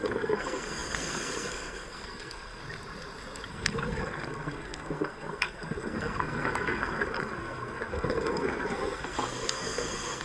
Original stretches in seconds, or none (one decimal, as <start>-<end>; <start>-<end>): 2.6-3.5